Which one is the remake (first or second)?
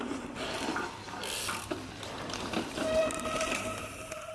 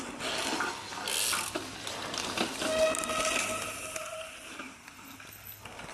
first